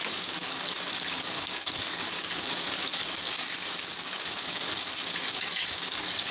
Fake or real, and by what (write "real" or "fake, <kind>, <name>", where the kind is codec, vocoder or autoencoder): fake, codec, DAC